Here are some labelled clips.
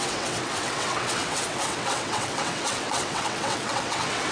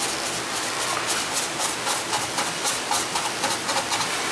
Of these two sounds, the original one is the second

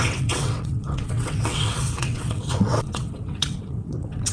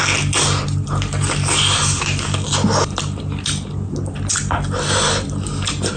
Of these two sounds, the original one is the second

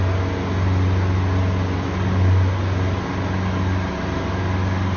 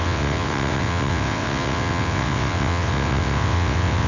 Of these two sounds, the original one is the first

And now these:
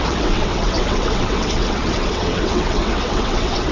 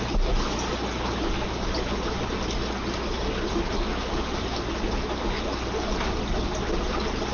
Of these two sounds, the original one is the second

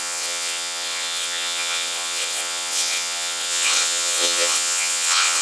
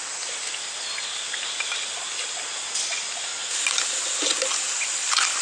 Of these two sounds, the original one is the second